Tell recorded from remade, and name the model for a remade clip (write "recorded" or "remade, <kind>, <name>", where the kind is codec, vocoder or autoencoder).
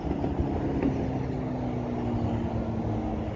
recorded